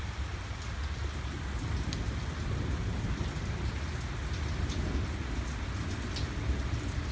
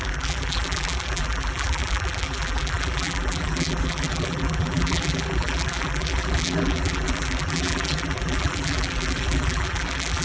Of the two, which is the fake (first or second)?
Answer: second